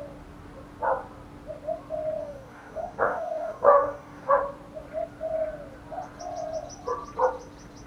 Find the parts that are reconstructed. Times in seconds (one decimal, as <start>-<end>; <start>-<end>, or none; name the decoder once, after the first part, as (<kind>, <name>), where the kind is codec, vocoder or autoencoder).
2.2-4.3 (codec, DAC)